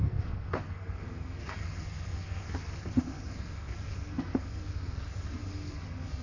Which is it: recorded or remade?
remade